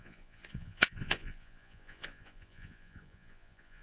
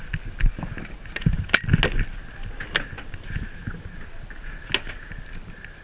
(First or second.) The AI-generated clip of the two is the first